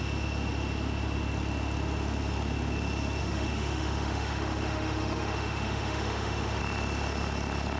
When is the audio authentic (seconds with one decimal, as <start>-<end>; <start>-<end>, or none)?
0.0-3.2; 6.6-7.8